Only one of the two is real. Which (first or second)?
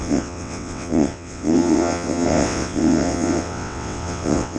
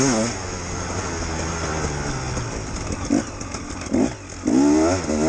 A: second